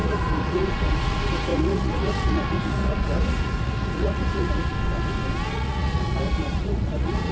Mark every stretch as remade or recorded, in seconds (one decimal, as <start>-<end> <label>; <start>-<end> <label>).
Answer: 0.0-4.7 remade; 4.7-5.5 recorded; 5.5-7.3 remade